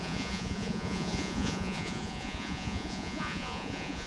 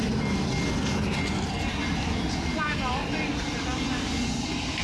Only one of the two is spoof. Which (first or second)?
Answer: first